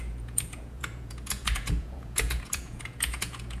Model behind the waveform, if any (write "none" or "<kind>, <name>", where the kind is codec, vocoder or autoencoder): vocoder, Vocos